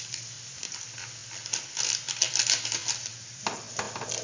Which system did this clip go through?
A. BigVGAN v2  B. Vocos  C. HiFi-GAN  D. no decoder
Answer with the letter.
D